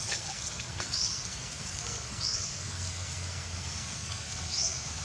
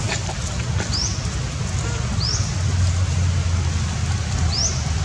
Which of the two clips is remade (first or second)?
first